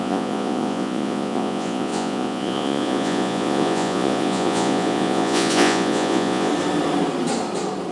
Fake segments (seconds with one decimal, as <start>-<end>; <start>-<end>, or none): 0.0-6.5